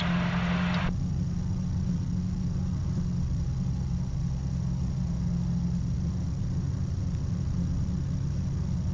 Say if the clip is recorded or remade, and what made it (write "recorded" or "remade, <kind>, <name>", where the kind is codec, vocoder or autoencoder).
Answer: recorded